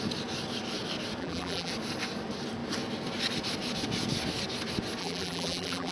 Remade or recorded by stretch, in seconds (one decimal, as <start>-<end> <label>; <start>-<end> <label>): 0.0-1.2 recorded; 1.2-1.7 remade; 1.7-5.0 recorded; 5.0-5.9 remade

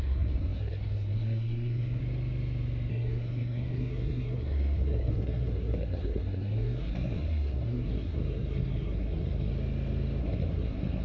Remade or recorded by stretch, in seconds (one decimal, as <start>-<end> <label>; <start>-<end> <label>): 0.0-2.0 remade; 2.0-2.9 recorded; 2.9-9.5 remade; 9.5-10.2 recorded; 10.2-11.0 remade

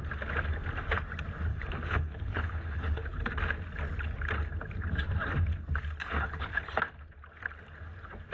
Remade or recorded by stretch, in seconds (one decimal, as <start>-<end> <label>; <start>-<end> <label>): 0.0-1.5 recorded; 1.5-3.3 remade; 3.3-6.0 recorded; 6.0-6.6 remade; 6.6-8.3 recorded

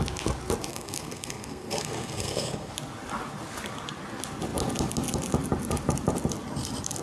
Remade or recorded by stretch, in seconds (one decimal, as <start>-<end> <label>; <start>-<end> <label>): 0.0-0.7 recorded; 0.7-2.7 remade; 2.7-7.0 recorded